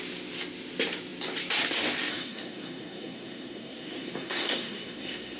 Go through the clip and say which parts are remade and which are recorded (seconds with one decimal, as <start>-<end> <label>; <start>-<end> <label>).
0.0-2.1 recorded; 2.1-5.4 remade